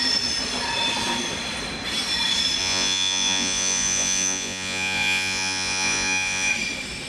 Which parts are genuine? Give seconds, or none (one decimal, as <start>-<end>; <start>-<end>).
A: 0.0-2.6; 6.5-7.1